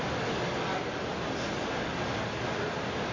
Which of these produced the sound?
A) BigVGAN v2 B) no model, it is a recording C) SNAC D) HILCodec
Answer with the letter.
B